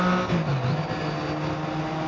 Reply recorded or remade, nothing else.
recorded